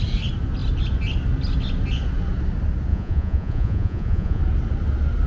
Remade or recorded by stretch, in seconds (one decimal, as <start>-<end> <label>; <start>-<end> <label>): 0.0-2.9 recorded; 2.9-4.4 remade; 4.4-5.3 recorded